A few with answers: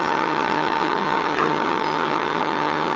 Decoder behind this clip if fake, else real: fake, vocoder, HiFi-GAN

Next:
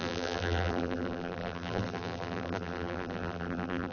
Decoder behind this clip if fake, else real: fake, vocoder, BigVGAN v2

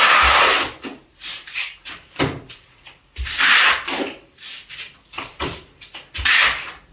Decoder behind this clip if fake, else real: real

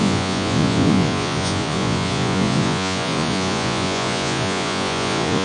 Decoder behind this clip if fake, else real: fake, vocoder, Vocos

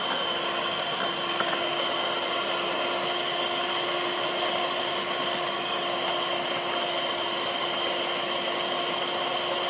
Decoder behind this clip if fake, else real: real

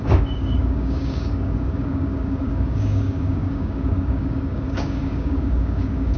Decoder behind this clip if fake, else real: fake, codec, DAC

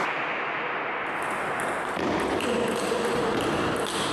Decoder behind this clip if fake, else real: real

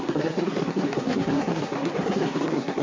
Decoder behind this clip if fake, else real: fake, codec, SNAC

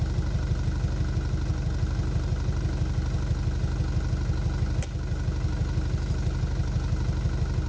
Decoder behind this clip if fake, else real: real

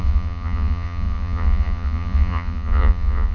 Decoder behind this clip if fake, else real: fake, vocoder, Vocos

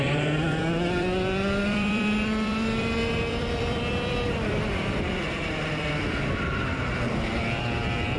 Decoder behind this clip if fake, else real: fake, vocoder, BigVGAN v2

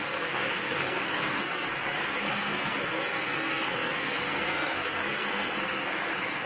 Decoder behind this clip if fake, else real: fake, codec, SNAC